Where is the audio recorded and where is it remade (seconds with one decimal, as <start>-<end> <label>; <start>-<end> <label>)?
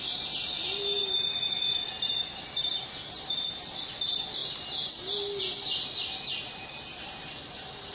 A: 0.0-7.9 recorded